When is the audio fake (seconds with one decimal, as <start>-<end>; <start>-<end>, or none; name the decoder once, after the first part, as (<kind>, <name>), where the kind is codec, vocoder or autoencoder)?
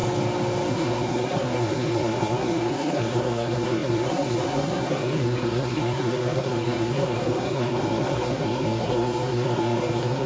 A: 0.7-10.3 (codec, SNAC)